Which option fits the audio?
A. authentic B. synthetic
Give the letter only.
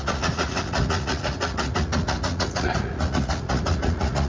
B